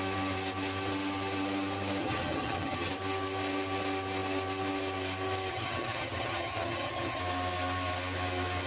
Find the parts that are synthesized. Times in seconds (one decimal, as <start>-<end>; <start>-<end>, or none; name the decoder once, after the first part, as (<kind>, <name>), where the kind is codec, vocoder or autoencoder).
2.0-2.9 (vocoder, HiFi-GAN); 5.5-7.2